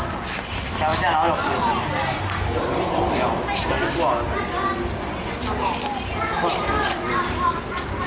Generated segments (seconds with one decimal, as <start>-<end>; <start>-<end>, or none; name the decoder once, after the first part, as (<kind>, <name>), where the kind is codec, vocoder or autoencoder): none